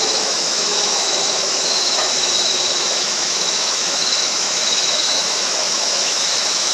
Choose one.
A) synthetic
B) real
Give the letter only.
A